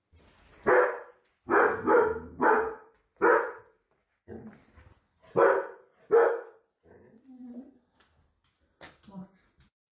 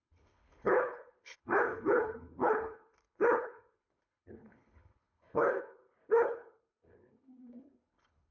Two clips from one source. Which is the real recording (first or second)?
first